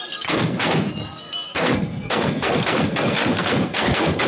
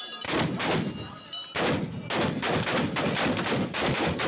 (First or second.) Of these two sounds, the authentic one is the second